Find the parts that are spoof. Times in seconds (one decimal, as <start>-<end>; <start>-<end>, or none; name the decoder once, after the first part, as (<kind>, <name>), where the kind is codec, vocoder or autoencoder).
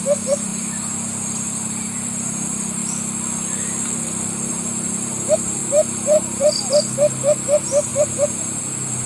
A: 0.0-2.8 (vocoder, BigVGAN v2); 4.5-9.1